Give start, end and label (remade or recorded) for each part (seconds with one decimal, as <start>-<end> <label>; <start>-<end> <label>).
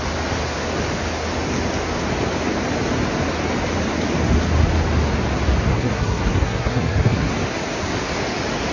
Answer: 0.0-5.7 recorded; 5.7-7.3 remade; 7.3-8.7 recorded